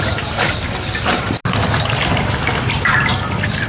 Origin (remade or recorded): recorded